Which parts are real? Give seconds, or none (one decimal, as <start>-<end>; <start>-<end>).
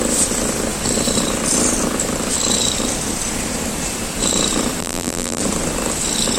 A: 0.0-4.8; 5.4-6.4